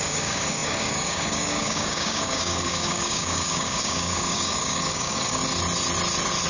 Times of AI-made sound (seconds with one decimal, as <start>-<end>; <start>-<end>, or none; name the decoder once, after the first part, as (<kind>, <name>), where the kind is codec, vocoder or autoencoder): 0.0-5.4 (codec, DAC)